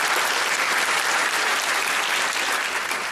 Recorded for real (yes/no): no